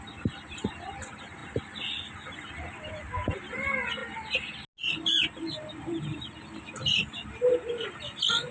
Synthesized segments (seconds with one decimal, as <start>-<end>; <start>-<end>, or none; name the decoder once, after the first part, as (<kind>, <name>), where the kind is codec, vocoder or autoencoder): none